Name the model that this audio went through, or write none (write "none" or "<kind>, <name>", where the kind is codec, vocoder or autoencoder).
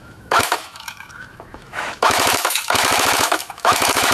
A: autoencoder, DAC-VAE